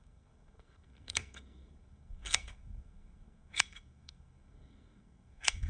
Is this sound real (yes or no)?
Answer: no